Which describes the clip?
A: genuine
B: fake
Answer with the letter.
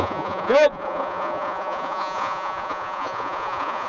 B